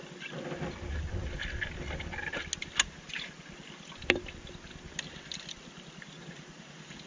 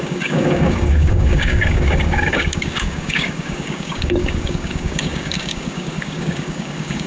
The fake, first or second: second